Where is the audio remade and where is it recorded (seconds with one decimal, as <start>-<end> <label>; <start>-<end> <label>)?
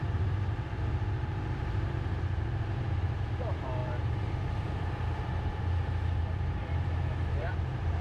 0.0-8.0 remade